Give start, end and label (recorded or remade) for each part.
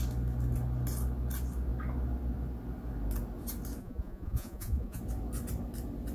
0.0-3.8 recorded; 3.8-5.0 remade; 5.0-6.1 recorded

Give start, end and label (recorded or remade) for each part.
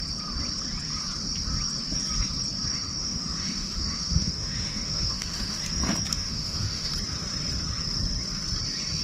0.0-2.7 recorded; 2.7-5.6 remade; 5.6-6.1 recorded; 6.1-6.9 remade; 6.9-9.0 recorded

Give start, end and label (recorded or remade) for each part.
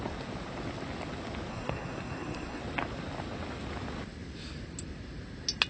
0.0-1.5 recorded; 1.5-2.6 remade; 2.6-5.7 recorded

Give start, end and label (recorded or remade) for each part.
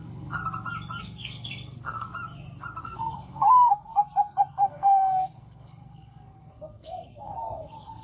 0.0-0.4 remade; 0.4-1.0 recorded; 1.0-2.1 remade; 2.1-2.8 recorded; 2.8-8.0 remade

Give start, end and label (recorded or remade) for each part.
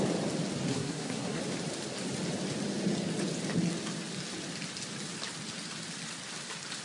0.0-0.7 recorded; 0.7-1.4 remade; 1.4-6.8 recorded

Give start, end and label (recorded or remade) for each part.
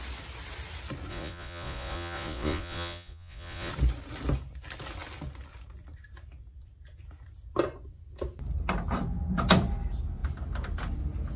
0.0-1.1 recorded; 1.1-3.7 remade; 3.7-11.4 recorded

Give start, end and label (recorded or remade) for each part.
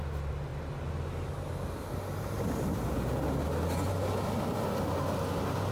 0.0-5.7 recorded